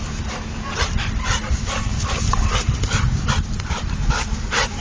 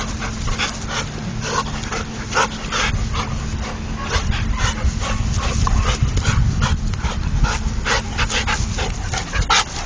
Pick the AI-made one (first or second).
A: first